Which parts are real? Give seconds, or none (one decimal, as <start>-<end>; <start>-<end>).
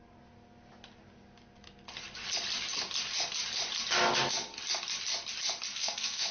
0.0-5.7